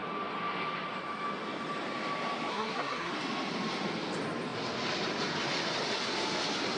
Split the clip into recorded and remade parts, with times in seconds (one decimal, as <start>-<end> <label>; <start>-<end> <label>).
0.0-2.5 recorded; 2.5-3.1 remade; 3.1-6.8 recorded